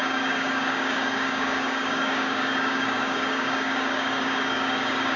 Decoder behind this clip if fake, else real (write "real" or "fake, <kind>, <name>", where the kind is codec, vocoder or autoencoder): fake, codec, DAC